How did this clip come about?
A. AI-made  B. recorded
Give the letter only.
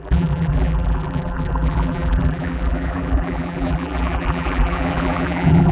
A